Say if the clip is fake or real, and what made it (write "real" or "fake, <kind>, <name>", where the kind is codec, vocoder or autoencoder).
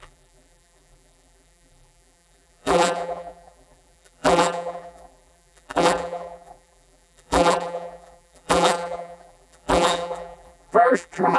fake, vocoder, BigVGAN v2